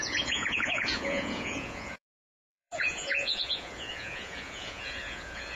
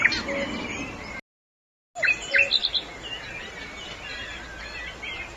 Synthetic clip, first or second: first